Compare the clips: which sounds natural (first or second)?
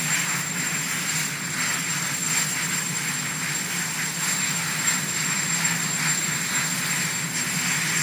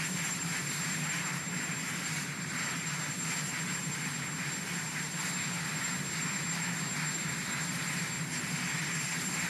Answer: first